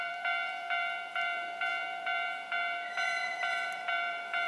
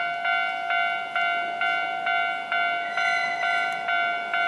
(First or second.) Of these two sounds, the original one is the second